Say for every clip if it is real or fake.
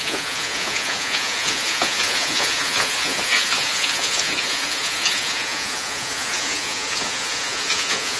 fake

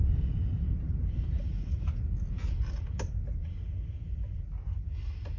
real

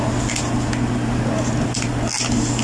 real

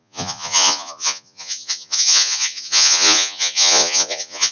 fake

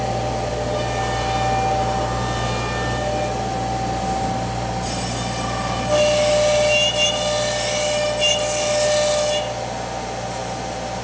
real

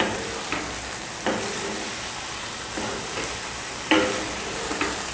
real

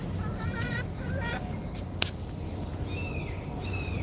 real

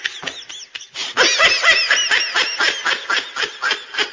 real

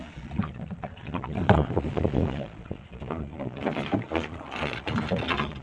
fake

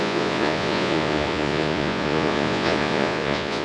fake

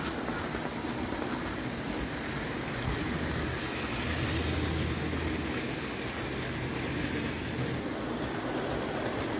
real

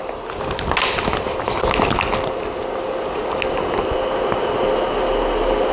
real